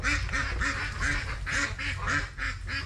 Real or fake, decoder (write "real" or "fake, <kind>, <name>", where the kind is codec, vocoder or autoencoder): real